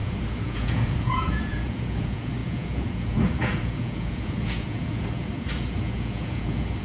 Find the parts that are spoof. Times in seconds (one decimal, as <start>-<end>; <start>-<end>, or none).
0.0-6.8